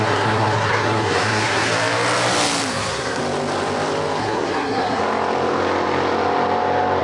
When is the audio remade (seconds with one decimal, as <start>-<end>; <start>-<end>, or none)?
0.0-1.7; 2.7-3.2; 4.2-5.0